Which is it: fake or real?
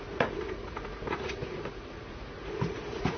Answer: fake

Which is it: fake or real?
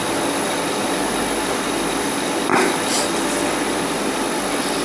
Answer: real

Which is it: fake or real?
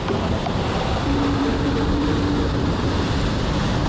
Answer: real